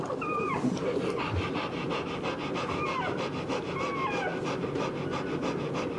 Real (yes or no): yes